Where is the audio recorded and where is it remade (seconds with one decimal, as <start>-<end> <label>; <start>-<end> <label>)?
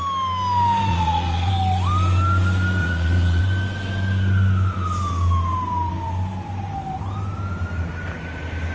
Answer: 0.0-0.9 recorded; 0.9-1.5 remade; 1.5-2.8 recorded; 2.8-3.4 remade; 3.4-8.7 recorded